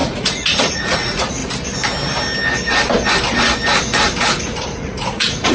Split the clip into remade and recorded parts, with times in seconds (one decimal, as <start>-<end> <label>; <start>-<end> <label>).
0.0-1.4 remade; 1.4-4.2 recorded; 4.2-5.5 remade